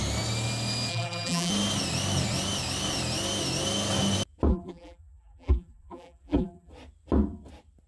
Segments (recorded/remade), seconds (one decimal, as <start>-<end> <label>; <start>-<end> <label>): 0.0-0.9 recorded; 0.9-1.5 remade; 1.5-4.5 recorded; 4.5-6.7 remade; 6.7-7.9 recorded